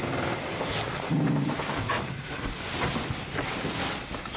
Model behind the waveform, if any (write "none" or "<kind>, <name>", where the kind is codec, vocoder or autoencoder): none